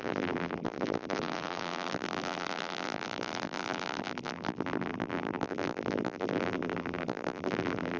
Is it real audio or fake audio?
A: fake